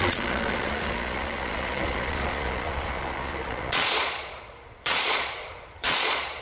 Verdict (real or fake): fake